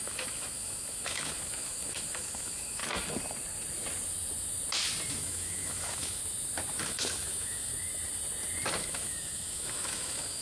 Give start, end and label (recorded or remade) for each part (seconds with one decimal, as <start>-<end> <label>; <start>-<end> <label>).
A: 0.0-2.8 remade; 2.8-5.1 recorded; 5.1-6.2 remade; 6.2-6.8 recorded; 6.8-7.7 remade; 7.7-8.8 recorded; 8.8-10.4 remade